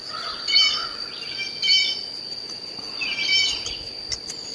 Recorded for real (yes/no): yes